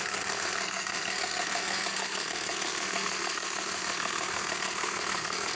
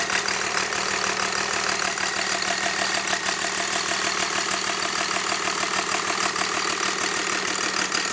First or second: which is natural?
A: second